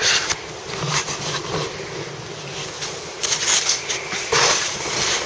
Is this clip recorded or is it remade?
recorded